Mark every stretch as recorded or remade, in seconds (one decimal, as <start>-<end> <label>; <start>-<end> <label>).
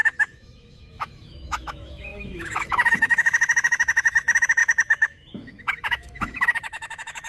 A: 0.0-7.3 remade